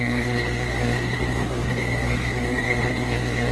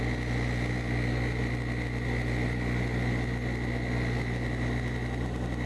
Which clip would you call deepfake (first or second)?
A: first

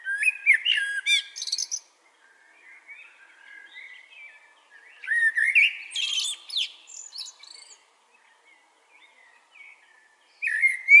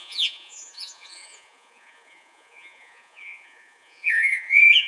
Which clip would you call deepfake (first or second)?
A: second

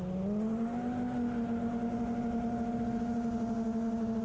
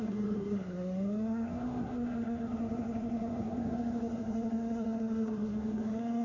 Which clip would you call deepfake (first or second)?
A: second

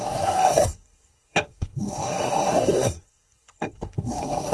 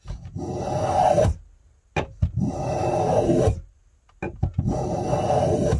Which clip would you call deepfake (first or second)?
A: first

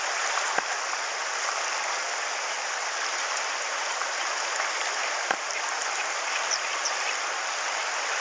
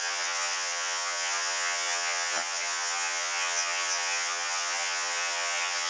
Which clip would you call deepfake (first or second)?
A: second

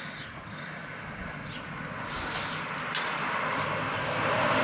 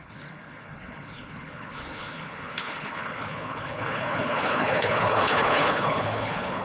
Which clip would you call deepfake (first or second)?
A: second